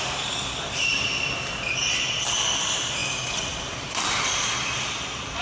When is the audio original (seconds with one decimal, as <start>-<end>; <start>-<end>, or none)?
0.0-5.4